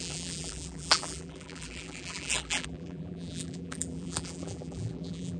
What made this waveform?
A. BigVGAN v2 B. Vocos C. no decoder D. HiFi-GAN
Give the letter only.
A